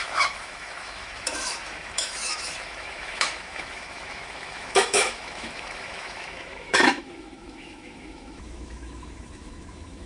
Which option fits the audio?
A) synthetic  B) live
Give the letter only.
A